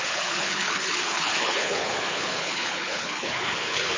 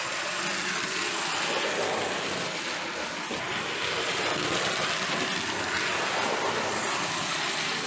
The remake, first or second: first